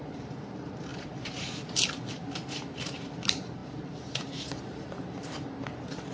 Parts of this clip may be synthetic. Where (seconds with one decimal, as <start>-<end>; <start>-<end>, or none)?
0.0-6.1